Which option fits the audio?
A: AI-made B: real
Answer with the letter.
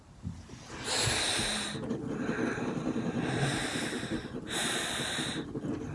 B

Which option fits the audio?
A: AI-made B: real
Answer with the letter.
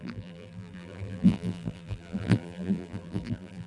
A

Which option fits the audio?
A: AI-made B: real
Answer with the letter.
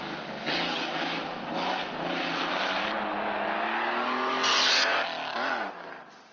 B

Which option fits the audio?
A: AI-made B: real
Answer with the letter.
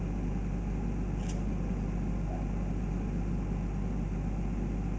B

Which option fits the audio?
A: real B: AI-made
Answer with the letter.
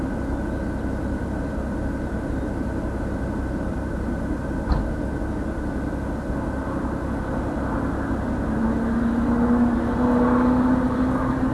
A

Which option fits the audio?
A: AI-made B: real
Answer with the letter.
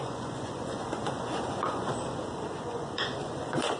A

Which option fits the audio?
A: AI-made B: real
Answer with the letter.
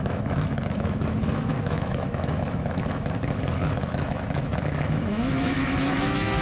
A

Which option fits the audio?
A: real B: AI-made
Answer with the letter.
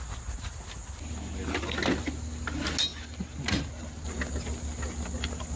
A